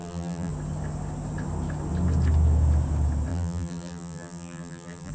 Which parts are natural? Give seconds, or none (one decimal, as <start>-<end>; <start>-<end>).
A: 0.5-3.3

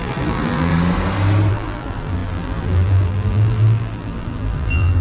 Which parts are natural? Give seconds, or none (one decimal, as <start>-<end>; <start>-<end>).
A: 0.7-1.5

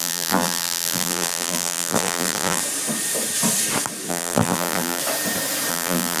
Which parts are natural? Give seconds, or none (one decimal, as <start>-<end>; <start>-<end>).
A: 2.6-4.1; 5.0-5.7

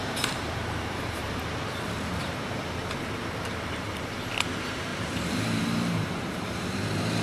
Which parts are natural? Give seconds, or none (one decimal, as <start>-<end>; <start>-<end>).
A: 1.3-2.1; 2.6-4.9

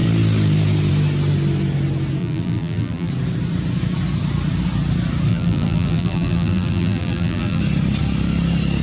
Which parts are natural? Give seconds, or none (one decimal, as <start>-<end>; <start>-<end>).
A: 0.0-2.2; 3.1-5.3; 7.6-8.8